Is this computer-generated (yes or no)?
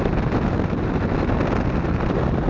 no